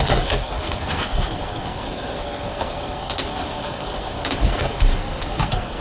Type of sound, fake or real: fake